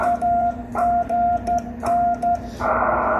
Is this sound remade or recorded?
remade